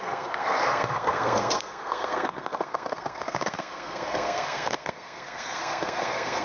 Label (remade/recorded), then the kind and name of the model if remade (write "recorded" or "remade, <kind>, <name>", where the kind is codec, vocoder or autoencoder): remade, codec, SNAC